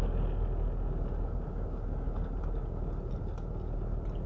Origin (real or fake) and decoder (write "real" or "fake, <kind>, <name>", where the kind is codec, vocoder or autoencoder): real